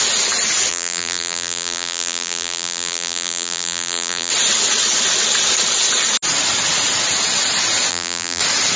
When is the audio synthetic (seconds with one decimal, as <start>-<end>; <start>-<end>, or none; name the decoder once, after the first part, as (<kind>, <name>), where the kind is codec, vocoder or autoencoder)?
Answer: 0.7-4.3 (vocoder, BigVGAN v2); 7.9-8.4